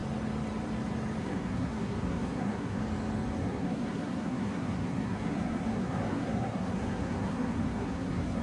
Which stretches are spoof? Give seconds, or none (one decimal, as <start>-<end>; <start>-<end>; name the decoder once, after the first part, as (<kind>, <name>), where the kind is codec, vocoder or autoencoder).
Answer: 1.2-2.8 (codec, SNAC); 3.4-8.4